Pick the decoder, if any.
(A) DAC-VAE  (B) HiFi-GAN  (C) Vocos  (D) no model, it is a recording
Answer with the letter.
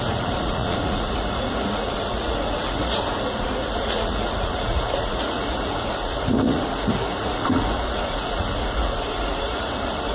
C